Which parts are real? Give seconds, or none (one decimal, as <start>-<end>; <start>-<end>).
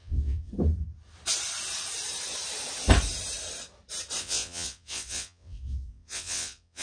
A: 0.5-4.2